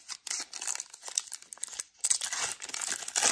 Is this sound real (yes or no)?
yes